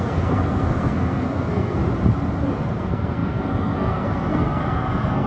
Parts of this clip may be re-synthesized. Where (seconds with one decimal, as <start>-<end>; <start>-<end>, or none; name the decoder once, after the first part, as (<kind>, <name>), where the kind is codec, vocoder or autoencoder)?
0.0-1.8 (codec, SNAC); 2.6-5.3